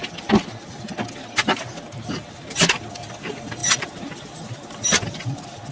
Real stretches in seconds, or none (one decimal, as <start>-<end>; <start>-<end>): 0.0-3.6